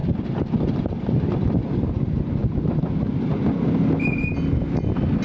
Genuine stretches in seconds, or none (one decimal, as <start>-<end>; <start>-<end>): 0.0-5.2